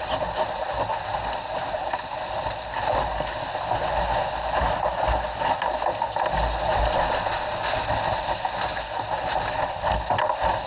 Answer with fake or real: real